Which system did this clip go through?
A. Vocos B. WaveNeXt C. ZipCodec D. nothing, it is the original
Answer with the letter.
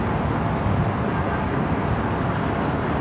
D